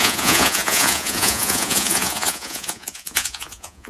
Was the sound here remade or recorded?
remade